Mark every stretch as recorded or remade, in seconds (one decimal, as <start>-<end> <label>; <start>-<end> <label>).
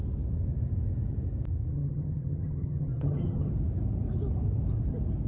0.0-1.7 recorded; 1.7-3.5 remade; 3.5-5.3 recorded